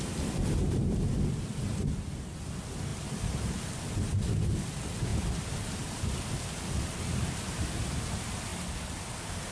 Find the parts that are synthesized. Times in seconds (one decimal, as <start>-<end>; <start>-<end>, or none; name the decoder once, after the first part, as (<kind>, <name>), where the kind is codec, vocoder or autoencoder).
none